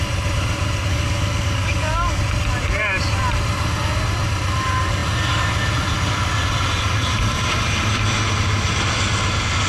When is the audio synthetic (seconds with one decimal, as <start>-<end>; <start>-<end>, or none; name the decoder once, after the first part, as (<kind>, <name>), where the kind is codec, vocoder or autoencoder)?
0.9-2.2 (codec, DAC)